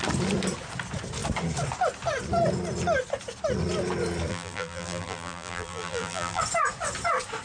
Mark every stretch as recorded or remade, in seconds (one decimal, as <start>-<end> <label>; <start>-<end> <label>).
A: 0.0-4.3 recorded; 4.3-6.4 remade; 6.4-7.4 recorded